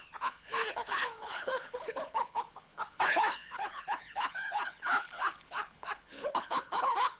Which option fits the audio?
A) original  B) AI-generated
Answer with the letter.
B